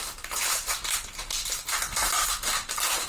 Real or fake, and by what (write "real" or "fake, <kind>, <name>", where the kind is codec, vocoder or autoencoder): fake, vocoder, BigVGAN v2